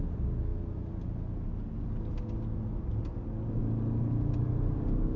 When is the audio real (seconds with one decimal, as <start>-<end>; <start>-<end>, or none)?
0.0-5.2